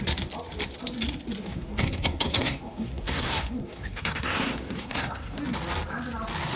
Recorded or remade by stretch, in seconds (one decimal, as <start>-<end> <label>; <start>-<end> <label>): 0.0-1.4 recorded; 1.4-5.4 remade; 5.4-6.6 recorded

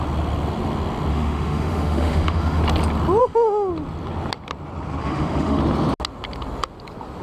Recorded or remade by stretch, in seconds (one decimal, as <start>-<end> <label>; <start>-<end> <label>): 0.0-1.1 recorded; 1.1-2.6 remade; 2.6-3.2 recorded; 3.2-3.7 remade; 3.7-5.0 recorded; 5.0-5.6 remade; 5.6-7.2 recorded